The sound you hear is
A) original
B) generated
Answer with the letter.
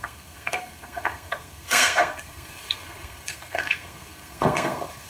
B